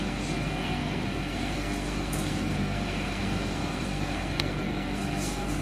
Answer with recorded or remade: remade